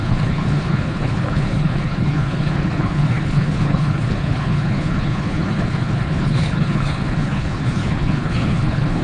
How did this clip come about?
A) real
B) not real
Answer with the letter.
B